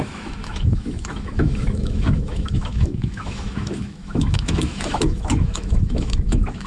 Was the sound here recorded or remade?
remade